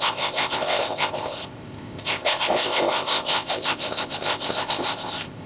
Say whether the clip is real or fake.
fake